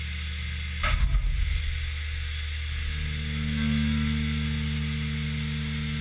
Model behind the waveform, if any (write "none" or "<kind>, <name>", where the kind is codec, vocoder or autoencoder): none